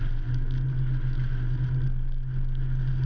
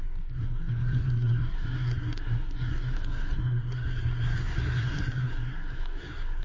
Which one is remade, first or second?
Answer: second